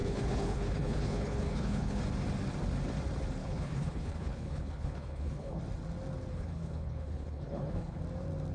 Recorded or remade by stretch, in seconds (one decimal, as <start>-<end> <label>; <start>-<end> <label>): 0.0-2.0 remade; 2.0-3.4 recorded; 3.4-5.6 remade; 5.6-6.3 recorded; 6.3-8.0 remade; 8.0-8.5 recorded

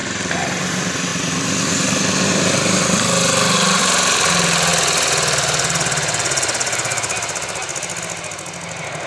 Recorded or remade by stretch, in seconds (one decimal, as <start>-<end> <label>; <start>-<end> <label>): 0.0-9.1 recorded